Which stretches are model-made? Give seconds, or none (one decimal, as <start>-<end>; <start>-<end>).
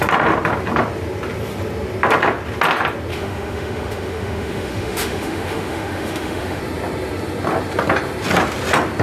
3.1-6.6